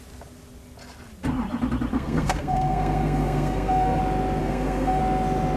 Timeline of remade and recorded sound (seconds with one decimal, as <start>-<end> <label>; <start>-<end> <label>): 0.0-1.9 recorded; 1.9-4.0 remade; 4.0-4.4 recorded; 4.4-5.0 remade; 5.0-5.6 recorded